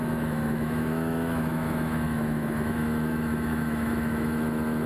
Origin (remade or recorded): remade